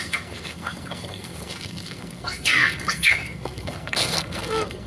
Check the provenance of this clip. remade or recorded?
remade